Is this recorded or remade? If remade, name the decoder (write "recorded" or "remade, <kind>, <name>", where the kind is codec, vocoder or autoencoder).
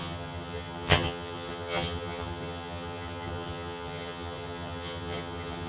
remade, vocoder, HiFi-GAN